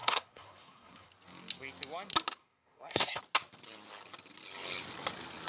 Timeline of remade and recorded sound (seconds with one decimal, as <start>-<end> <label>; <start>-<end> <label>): 0.0-1.1 remade; 1.1-2.4 recorded; 2.4-3.2 remade; 3.2-5.5 recorded